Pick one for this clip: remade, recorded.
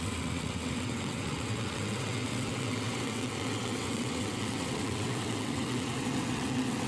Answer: remade